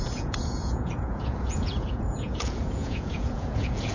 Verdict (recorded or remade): remade